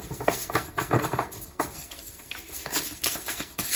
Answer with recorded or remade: remade